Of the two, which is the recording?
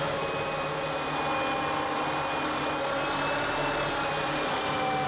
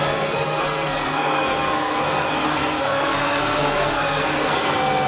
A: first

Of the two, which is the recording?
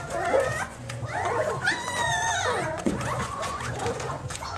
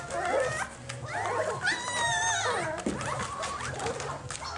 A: second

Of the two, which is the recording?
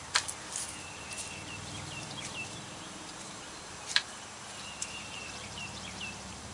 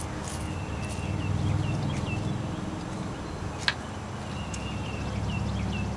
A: second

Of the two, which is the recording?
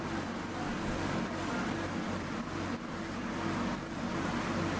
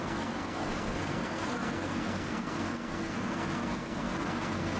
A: first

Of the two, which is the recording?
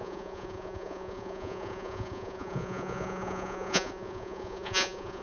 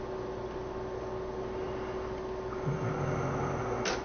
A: second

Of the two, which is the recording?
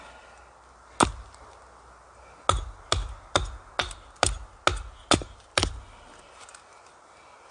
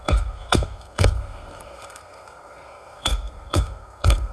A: first